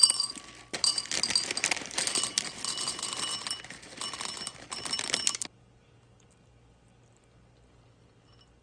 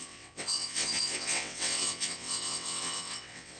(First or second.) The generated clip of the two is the second